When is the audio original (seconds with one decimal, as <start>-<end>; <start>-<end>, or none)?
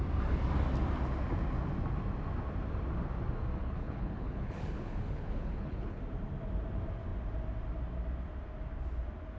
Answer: 0.0-3.6; 6.0-9.4